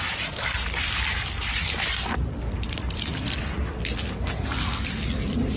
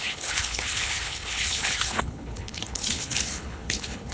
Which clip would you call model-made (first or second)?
second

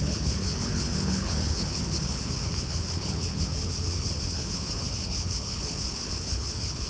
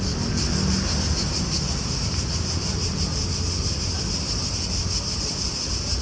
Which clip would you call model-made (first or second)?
first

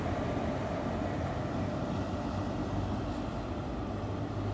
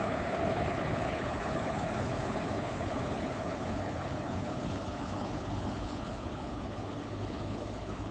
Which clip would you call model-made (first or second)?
second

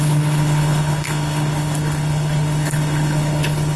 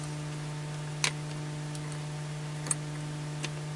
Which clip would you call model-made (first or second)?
first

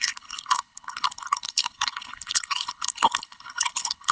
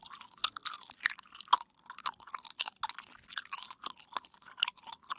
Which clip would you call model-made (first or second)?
first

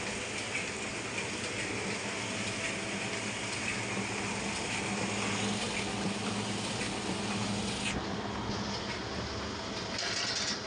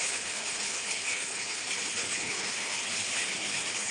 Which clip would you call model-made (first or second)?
second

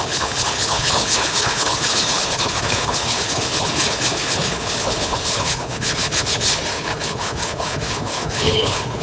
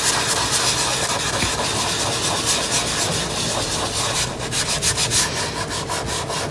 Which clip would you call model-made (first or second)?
first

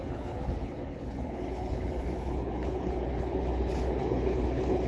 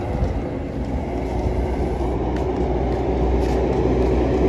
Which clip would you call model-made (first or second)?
first